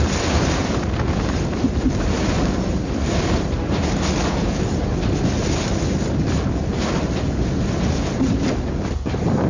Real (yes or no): no